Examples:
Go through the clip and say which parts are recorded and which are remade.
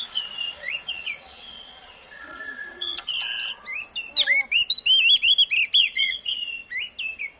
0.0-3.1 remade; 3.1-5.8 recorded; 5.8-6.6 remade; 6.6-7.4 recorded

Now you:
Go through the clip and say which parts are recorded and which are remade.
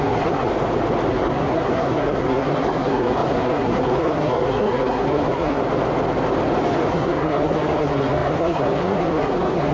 0.0-0.5 remade; 0.5-1.1 recorded; 1.1-5.6 remade; 5.6-6.9 recorded; 6.9-9.7 remade